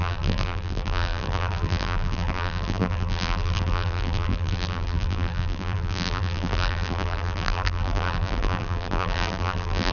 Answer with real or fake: fake